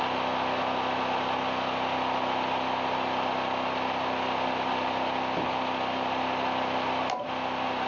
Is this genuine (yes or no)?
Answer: yes